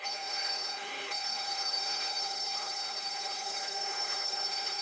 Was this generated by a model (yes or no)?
yes